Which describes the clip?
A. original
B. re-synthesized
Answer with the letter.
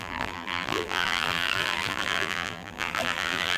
B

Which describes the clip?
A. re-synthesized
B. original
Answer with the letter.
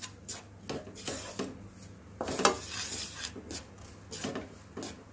B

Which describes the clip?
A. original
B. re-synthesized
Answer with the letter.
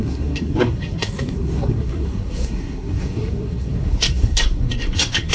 B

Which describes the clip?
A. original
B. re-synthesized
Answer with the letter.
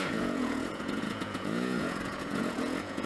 B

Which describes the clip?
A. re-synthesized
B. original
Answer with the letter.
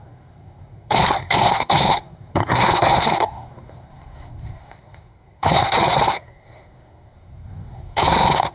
A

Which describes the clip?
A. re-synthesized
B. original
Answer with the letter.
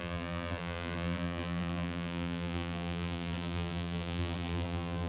A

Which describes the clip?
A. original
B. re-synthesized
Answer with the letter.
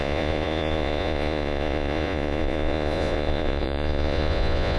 B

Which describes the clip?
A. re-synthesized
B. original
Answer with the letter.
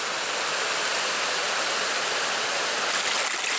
B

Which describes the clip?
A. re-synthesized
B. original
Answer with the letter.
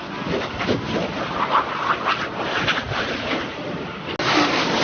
B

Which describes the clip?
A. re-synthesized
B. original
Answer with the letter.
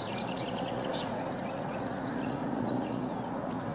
A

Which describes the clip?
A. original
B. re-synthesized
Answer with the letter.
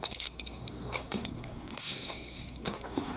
B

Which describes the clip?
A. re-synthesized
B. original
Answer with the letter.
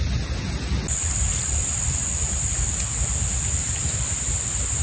B